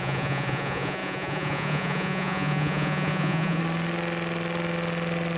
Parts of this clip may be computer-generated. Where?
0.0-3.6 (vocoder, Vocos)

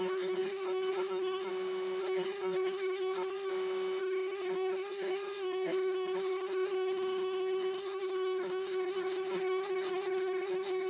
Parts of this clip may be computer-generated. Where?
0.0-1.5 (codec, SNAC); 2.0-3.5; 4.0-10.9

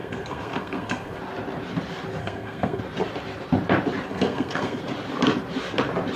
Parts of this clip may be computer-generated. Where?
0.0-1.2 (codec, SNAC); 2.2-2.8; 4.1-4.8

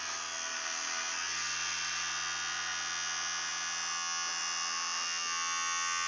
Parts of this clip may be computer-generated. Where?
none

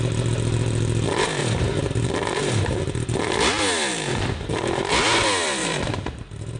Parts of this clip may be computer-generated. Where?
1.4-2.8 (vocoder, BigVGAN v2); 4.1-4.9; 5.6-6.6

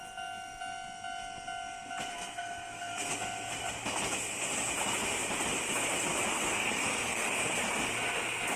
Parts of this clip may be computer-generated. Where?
2.1-3.1 (codec, SNAC); 6.3-7.6

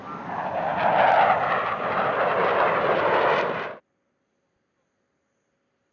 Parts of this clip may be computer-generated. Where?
none

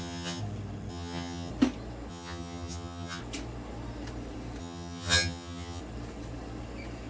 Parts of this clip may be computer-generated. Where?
0.0-0.4 (vocoder, HiFi-GAN); 0.9-1.5; 2.1-3.2; 4.6-5.8